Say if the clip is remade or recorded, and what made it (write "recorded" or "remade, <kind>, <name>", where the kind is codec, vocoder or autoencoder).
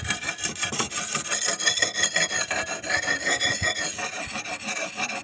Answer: recorded